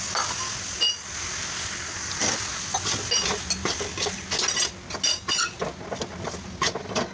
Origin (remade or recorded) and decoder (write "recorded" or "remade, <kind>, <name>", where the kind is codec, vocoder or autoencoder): recorded